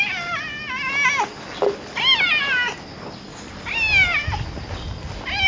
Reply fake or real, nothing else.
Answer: real